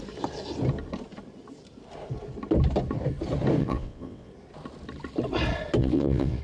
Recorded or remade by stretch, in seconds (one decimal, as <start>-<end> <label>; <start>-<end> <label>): 0.0-3.6 recorded; 3.6-4.3 remade; 4.3-5.8 recorded; 5.8-6.4 remade